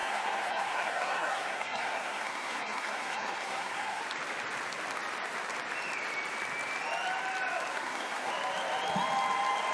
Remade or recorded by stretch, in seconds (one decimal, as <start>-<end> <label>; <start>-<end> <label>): 0.0-4.0 remade; 4.0-7.7 recorded; 7.7-8.3 remade; 8.3-9.7 recorded